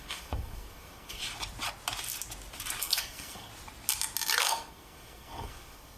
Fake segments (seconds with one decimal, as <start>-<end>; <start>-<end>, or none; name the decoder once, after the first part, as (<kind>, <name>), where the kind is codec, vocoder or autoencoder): 0.0-1.2 (codec, SNAC); 2.8-3.5; 4.4-6.0